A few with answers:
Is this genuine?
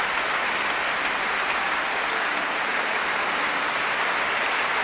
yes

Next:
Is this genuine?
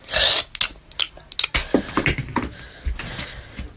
yes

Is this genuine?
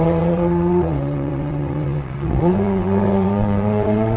no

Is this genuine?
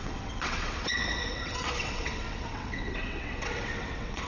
no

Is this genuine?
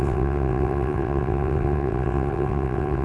no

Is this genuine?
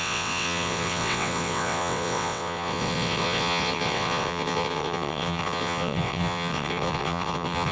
no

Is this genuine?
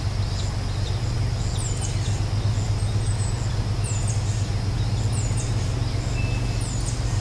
yes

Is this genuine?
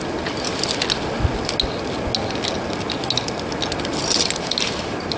yes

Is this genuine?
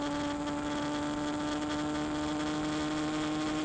yes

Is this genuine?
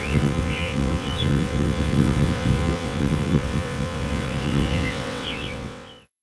no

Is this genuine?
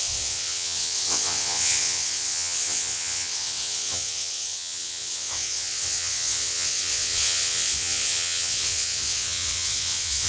no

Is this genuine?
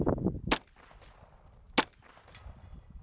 yes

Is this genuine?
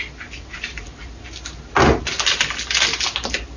yes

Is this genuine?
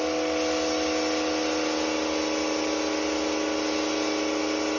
yes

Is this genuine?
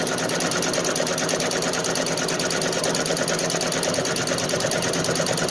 yes